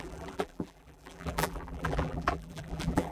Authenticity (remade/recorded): remade